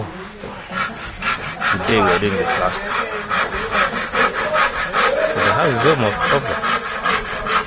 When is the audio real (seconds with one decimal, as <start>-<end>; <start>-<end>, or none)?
0.0-7.7